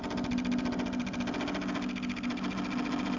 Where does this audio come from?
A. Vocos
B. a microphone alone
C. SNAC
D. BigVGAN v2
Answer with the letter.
B